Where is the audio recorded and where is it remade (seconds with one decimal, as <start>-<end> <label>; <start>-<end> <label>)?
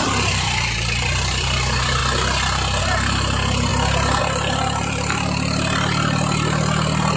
0.0-2.0 remade; 2.0-2.8 recorded; 2.8-3.7 remade; 3.7-4.2 recorded; 4.2-7.2 remade